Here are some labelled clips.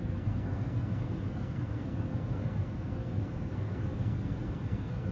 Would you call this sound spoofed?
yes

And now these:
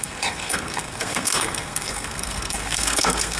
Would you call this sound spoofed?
yes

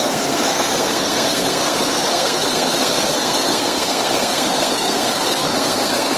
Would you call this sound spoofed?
yes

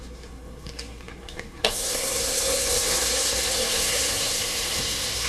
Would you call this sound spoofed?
yes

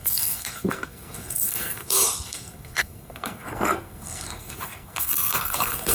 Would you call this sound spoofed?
yes